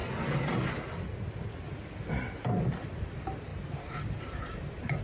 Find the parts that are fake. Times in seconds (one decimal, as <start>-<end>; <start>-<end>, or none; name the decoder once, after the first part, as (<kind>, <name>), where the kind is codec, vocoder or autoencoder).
3.0-3.5 (vocoder, BigVGAN v2); 4.4-5.0